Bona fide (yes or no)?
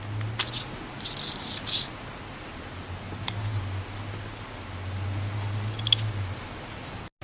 yes